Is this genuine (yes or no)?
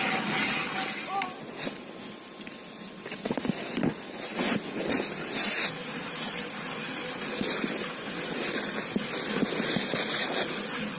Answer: yes